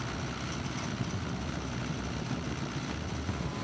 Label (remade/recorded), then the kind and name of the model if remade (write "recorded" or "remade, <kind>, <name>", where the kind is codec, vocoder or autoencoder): recorded